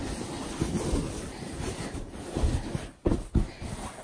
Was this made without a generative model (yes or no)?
yes